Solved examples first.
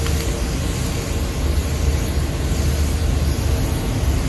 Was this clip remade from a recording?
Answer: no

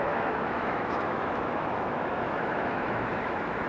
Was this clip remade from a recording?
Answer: yes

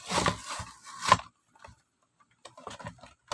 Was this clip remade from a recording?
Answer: no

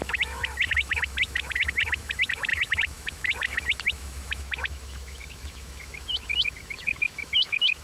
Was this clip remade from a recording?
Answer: yes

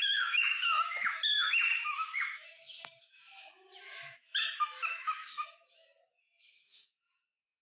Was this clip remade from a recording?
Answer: yes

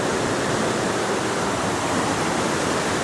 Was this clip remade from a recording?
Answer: no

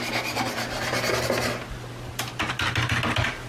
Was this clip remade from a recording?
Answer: no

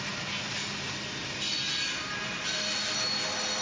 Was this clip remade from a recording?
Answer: no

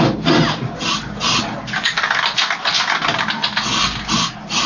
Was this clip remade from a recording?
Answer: no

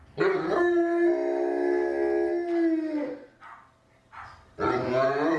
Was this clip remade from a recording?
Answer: no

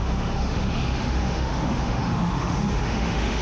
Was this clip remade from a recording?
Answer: yes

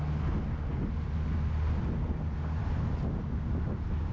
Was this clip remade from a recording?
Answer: no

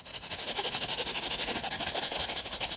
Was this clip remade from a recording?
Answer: yes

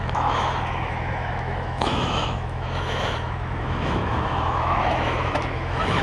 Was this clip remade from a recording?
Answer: yes